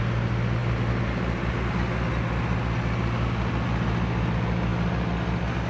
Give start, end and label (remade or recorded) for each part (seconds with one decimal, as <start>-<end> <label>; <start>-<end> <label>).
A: 0.0-5.7 recorded